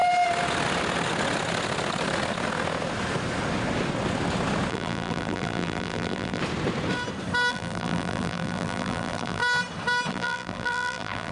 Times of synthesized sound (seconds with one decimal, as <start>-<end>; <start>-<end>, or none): 4.7-6.4; 7.5-9.4; 10.1-11.3

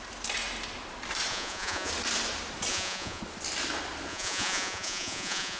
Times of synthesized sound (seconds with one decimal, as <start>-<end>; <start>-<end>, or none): 1.3-1.9; 2.7-3.2; 4.1-5.6

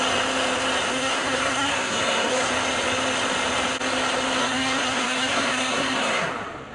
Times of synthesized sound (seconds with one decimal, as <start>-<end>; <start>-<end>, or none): 0.9-2.5; 4.4-6.3

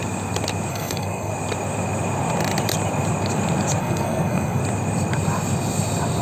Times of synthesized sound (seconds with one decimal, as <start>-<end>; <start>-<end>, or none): 0.7-1.3; 3.8-4.6

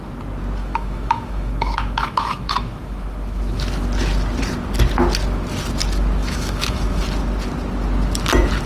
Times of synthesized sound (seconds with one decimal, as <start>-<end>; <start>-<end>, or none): 0.6-3.6; 6.2-7.0

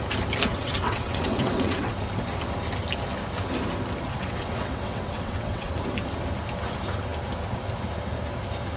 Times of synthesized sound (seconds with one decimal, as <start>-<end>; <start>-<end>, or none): 0.5-1.9; 4.1-5.7

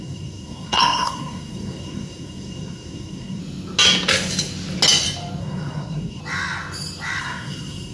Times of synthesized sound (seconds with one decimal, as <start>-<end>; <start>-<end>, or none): 0.0-3.4; 5.4-6.2; 7.2-7.9